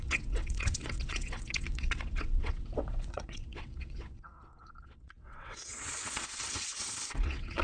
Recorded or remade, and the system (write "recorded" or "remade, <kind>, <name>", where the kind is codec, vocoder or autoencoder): remade, vocoder, WaveNeXt